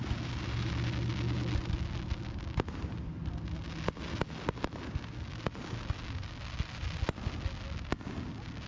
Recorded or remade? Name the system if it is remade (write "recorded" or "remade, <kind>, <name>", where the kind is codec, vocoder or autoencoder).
recorded